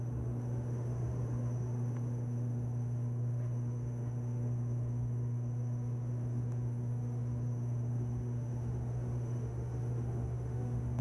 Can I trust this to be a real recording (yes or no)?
no